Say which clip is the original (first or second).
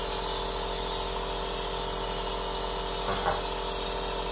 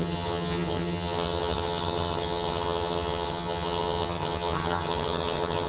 first